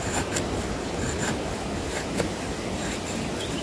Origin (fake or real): real